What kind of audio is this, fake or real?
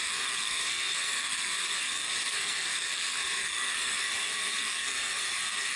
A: fake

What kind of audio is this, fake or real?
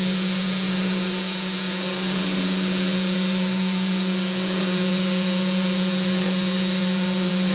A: fake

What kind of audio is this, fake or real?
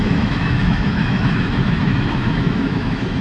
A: fake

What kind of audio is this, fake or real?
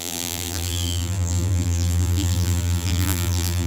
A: fake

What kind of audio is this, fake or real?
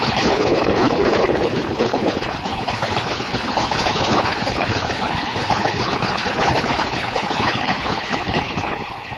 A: fake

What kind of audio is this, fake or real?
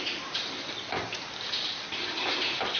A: real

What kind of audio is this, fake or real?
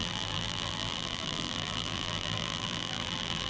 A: fake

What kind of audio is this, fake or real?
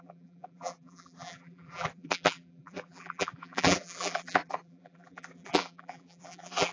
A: fake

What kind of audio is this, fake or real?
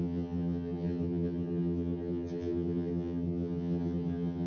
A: fake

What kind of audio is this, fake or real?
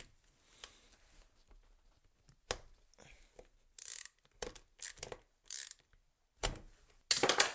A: real